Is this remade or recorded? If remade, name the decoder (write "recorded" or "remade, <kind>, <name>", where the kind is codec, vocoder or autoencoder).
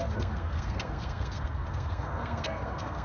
remade, codec, SNAC